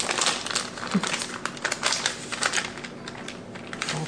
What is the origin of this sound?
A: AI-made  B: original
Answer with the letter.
B